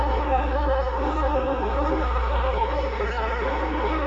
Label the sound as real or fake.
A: fake